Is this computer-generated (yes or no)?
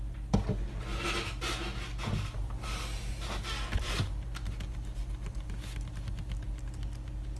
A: no